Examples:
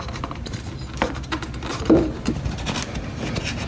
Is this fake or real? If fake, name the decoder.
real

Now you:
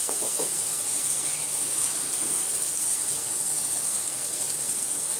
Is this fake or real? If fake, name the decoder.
fake, codec, SNAC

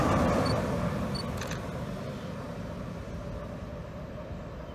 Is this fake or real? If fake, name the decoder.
real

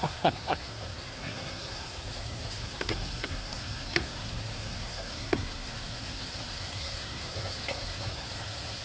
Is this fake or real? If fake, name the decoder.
fake, codec, SNAC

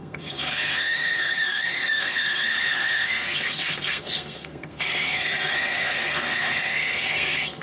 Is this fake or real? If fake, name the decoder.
fake, codec, SNAC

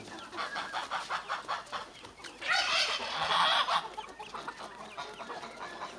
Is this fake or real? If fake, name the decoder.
real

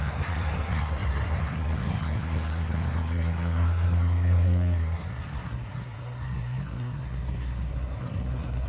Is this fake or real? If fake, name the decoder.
fake, codec, SNAC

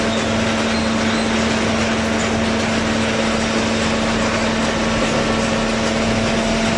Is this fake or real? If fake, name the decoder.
real